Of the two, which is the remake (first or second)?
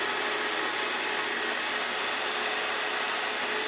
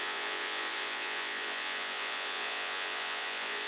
second